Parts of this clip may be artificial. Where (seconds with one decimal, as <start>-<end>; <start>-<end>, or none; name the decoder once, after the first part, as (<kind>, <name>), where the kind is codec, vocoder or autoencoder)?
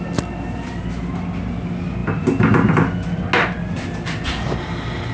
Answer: none